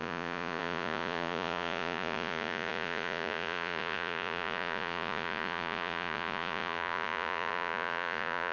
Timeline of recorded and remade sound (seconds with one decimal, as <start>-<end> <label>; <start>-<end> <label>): 0.0-8.5 remade